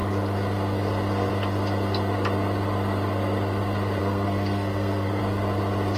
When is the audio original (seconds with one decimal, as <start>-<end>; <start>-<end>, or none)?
0.0-4.0; 5.2-6.0